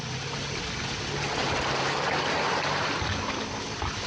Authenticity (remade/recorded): recorded